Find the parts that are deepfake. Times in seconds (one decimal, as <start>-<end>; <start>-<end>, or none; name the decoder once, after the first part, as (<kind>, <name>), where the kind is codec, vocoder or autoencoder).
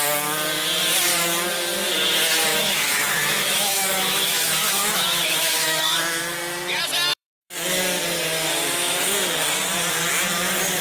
2.5-6.2 (autoencoder, DAC-VAE); 7.1-7.8